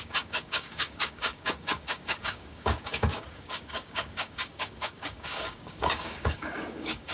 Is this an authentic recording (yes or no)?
no